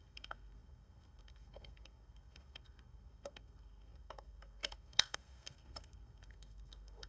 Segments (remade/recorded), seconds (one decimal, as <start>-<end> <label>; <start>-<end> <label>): 0.0-7.1 remade